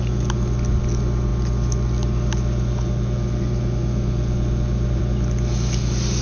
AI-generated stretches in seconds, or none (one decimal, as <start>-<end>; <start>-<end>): none